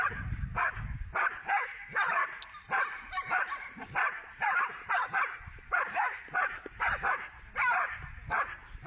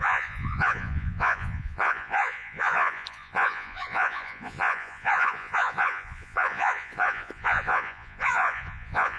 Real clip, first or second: first